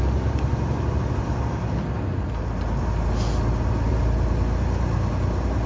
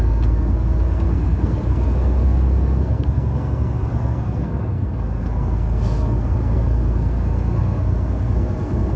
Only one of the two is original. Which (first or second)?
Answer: first